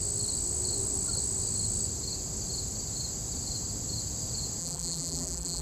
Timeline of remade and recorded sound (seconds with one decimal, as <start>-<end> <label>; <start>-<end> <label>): 0.0-4.6 recorded; 4.6-5.6 remade